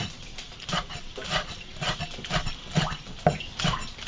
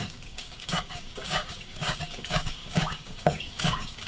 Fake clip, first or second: second